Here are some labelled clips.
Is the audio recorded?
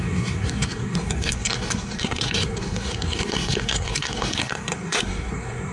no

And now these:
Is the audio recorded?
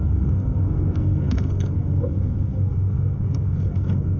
no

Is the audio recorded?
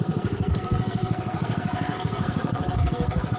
no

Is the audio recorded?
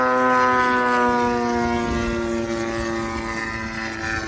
yes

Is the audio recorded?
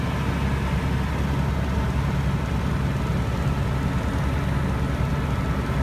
yes